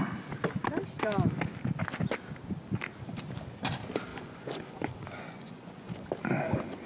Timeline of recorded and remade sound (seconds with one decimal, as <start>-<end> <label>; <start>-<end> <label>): 0.0-4.1 recorded; 4.1-6.1 remade; 6.1-6.9 recorded